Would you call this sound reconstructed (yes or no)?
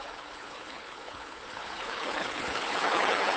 yes